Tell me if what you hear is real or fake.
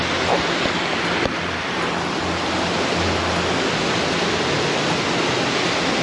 real